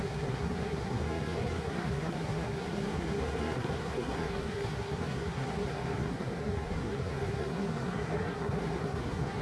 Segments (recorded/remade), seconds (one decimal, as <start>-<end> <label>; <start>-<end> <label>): 0.0-9.4 remade

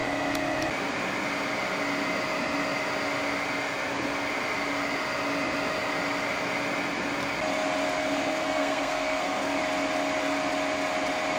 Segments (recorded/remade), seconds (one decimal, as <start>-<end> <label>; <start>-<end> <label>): 0.0-8.0 recorded; 8.0-9.6 remade; 9.6-11.4 recorded

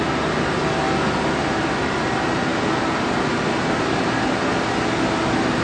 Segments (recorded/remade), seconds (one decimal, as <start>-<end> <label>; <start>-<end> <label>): 0.0-5.6 recorded